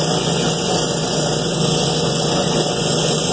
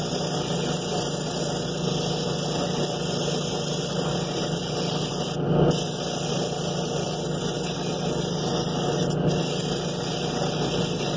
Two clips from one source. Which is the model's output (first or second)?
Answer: first